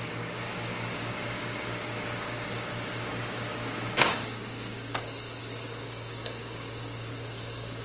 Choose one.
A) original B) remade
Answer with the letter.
B